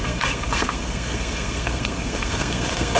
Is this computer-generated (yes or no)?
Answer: yes